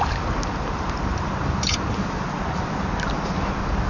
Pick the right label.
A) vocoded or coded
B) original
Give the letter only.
B